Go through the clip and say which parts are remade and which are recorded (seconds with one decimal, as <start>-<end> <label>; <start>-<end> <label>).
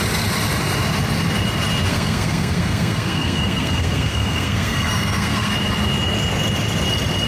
0.0-1.9 recorded; 1.9-5.5 remade; 5.5-7.3 recorded